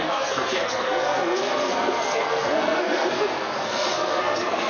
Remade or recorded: remade